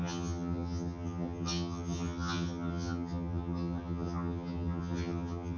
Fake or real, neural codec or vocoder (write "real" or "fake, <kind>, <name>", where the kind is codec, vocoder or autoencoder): fake, vocoder, HiFi-GAN